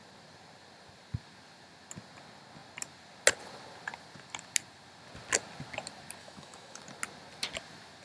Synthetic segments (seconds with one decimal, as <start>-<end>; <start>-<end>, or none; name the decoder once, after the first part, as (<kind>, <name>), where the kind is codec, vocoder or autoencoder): 6.2-6.8 (autoencoder, DAC-VAE)